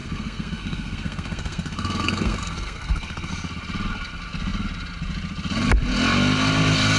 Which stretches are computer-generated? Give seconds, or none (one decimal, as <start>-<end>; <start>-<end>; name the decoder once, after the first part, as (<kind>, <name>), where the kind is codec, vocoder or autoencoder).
0.0-3.3 (codec, SNAC)